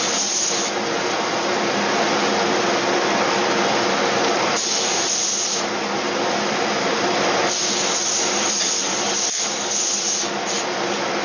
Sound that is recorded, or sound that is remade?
recorded